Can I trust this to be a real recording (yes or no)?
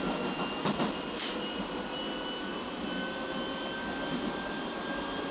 yes